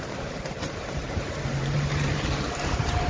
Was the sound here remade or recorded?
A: remade